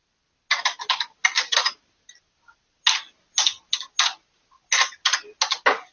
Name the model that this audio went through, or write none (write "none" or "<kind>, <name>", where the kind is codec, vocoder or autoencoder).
none